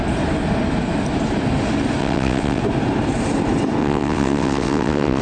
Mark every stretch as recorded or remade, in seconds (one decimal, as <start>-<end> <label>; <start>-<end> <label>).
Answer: 0.0-2.0 recorded; 2.0-2.6 remade; 2.6-3.8 recorded; 3.8-5.2 remade

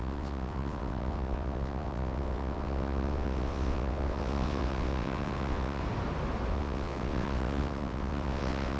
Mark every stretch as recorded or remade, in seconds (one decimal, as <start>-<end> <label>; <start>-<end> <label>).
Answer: 0.0-5.8 remade; 5.8-6.5 recorded; 6.5-8.8 remade

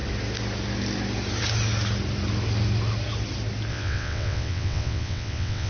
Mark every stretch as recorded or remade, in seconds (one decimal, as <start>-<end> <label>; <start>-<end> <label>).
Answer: 0.0-3.7 recorded; 3.7-5.7 remade

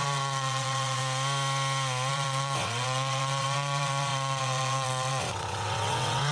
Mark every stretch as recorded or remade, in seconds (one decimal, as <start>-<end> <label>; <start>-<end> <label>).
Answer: 0.0-1.0 remade; 1.0-2.1 recorded; 2.1-6.3 remade

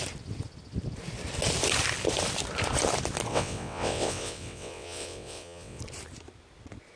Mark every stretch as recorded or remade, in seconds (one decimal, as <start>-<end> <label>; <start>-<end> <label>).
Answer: 0.0-3.3 recorded; 3.3-5.8 remade; 5.8-7.0 recorded

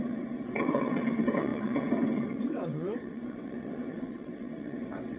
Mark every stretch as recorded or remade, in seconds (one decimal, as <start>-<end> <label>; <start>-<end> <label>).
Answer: 0.0-5.2 remade